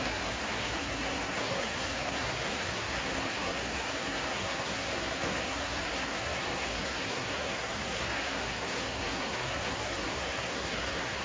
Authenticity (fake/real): fake